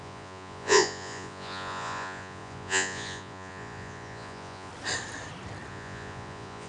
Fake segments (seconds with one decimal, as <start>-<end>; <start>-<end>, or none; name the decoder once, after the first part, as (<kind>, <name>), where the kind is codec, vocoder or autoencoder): 0.0-4.7 (vocoder, Vocos); 5.7-6.7